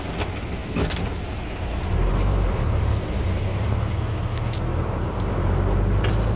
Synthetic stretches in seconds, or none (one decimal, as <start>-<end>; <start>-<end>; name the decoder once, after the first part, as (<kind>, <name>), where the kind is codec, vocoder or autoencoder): 0.6-2.8 (vocoder, BigVGAN v2); 4.7-5.6